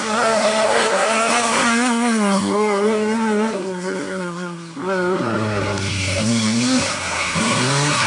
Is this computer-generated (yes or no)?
yes